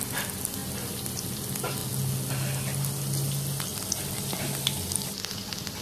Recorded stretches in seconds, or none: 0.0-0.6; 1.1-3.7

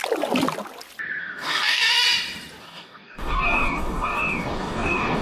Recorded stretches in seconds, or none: 0.0-1.2; 1.8-2.6

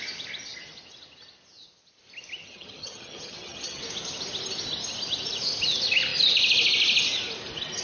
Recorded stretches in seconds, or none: 0.0-2.4; 3.8-7.8

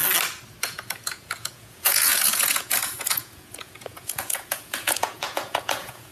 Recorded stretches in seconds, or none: 0.0-0.6

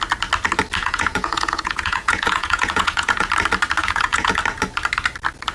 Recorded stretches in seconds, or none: 0.0-0.8; 3.3-3.8; 4.4-5.5

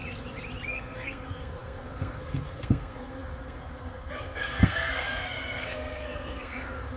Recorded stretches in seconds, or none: 0.0-0.7

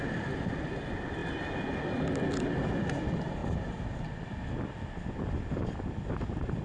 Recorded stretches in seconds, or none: 0.0-6.6

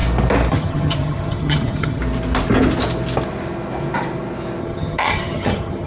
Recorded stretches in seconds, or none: 0.0-0.5; 2.0-4.6